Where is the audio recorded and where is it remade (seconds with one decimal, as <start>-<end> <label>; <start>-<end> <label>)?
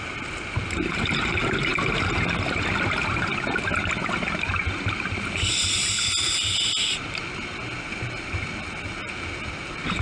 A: 0.0-10.0 recorded